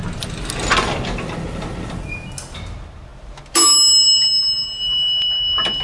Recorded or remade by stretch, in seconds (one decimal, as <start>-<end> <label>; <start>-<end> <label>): 0.0-5.8 recorded